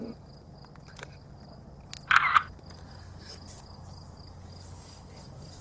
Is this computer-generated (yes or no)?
no